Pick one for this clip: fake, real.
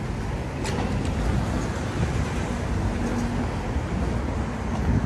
real